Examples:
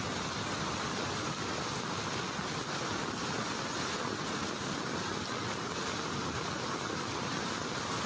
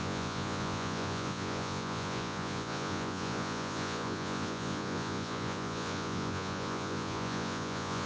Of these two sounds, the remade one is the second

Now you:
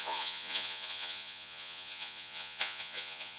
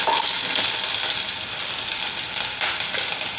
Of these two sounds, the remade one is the first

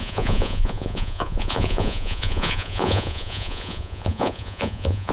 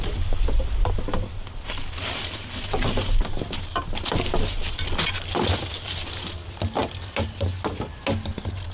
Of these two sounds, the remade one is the first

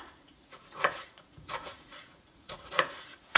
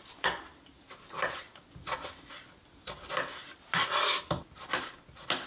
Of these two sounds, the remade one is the first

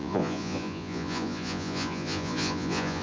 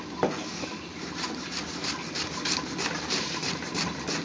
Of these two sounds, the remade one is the first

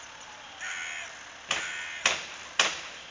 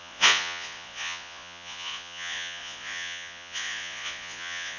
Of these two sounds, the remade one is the second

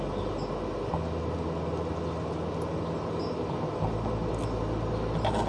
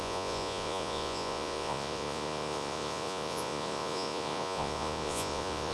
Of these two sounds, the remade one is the second